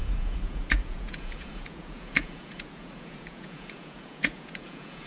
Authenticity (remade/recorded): remade